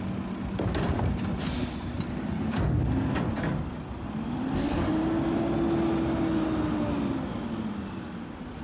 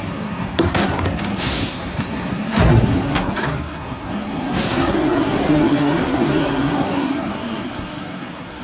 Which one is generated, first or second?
second